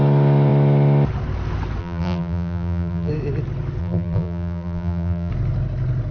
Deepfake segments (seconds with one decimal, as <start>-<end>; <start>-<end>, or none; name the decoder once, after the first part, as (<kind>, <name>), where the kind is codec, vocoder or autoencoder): 1.8-3.1 (vocoder, BigVGAN v2); 3.8-5.3